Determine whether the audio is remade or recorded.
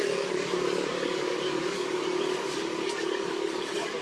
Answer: remade